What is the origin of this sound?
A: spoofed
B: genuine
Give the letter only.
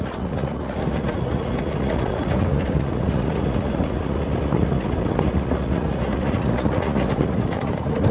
A